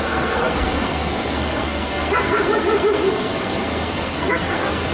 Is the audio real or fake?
fake